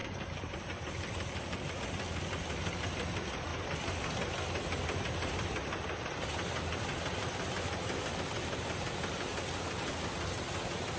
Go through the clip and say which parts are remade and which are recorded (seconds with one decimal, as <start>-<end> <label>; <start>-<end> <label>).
0.0-1.7 remade; 1.7-11.0 recorded